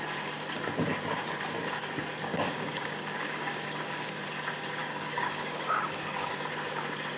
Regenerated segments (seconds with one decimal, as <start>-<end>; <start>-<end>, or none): 2.3-4.1; 4.8-6.0